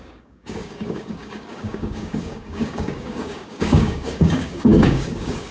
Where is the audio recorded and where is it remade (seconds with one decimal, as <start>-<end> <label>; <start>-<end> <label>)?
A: 0.0-5.5 remade